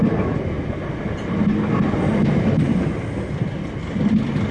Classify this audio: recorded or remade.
recorded